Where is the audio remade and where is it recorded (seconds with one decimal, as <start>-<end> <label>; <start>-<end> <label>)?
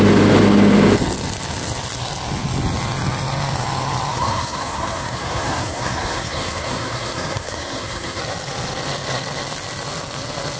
0.0-4.1 recorded; 4.1-8.2 remade; 8.2-10.6 recorded